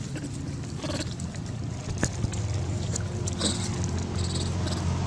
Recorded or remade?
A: recorded